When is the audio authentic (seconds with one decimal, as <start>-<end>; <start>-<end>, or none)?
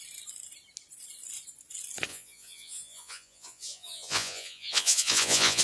0.0-2.1